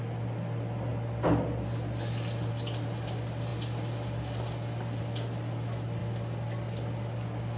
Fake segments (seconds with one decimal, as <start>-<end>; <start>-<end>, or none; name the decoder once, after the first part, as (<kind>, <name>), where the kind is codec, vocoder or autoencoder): none